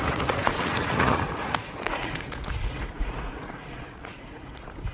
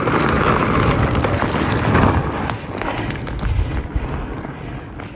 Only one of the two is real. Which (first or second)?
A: second